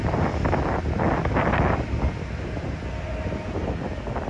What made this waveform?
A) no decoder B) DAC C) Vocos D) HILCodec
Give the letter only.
A